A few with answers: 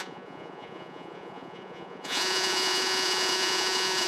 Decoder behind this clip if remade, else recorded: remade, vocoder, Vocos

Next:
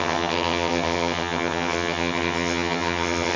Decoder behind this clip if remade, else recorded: remade, vocoder, HiFi-GAN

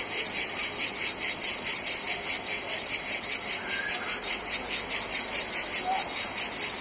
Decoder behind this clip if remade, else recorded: recorded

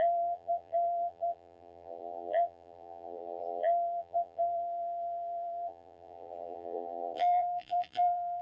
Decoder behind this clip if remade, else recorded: remade, vocoder, BigVGAN v2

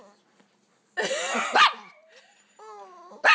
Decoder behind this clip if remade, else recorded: recorded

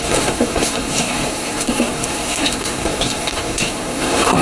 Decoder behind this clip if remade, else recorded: remade, codec, SNAC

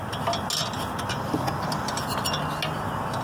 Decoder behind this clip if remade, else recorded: recorded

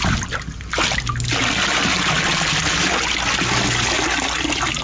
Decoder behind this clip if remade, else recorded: recorded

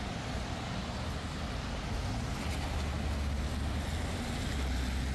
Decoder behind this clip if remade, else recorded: recorded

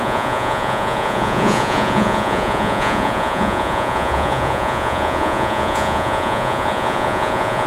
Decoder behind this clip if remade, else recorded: remade, vocoder, Vocos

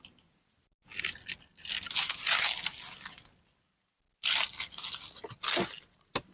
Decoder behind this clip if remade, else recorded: recorded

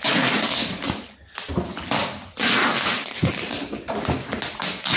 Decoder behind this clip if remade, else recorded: recorded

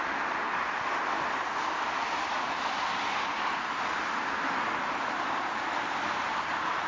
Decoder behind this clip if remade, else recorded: recorded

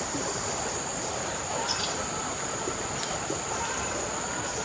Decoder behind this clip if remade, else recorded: recorded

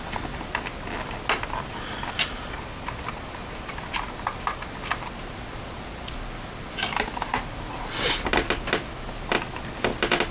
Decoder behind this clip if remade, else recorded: recorded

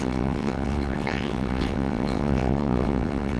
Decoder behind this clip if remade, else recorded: remade, vocoder, WaveNeXt